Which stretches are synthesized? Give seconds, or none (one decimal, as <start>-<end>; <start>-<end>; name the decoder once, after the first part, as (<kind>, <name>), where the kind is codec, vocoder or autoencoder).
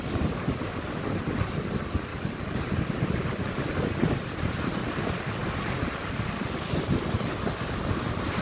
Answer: 2.1-3.7 (vocoder, BigVGAN v2); 5.4-6.1